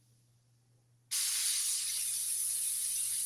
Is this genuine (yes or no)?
yes